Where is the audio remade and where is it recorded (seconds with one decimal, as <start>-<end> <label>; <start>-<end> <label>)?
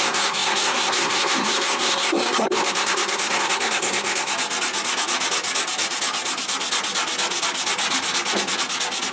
0.0-4.3 remade; 4.3-9.1 recorded